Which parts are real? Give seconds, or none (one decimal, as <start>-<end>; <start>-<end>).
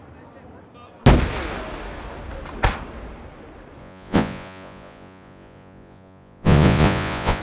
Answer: 0.0-3.8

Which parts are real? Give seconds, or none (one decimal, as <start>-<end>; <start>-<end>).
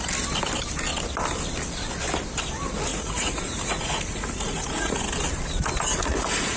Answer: 0.0-2.9; 5.0-5.9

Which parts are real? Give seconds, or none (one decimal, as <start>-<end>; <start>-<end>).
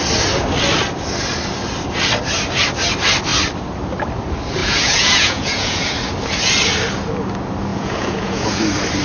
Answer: 0.0-4.6; 5.9-7.7; 8.6-9.0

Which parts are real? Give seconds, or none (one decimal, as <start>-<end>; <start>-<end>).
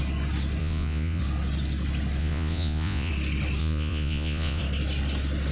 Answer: 0.0-0.6; 1.2-2.2; 3.1-3.6; 4.6-5.5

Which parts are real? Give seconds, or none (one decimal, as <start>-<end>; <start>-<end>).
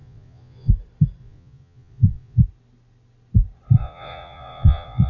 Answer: 0.7-1.2; 2.4-3.8